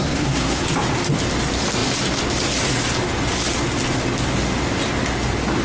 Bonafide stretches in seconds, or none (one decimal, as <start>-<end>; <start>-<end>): 0.7-5.6